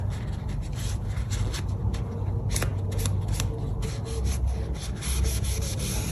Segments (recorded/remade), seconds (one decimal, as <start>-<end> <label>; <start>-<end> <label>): 0.0-6.1 recorded